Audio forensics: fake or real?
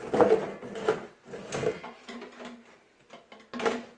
real